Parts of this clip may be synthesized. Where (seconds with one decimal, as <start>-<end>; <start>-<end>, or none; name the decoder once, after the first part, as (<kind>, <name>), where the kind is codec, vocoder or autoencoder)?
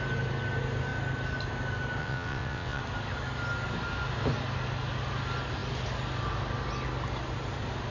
2.0-2.8 (vocoder, WaveNeXt)